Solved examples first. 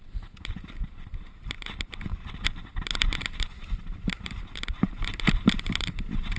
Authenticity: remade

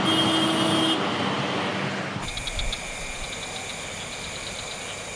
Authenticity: recorded